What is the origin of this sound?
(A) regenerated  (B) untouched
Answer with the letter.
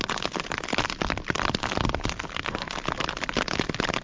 B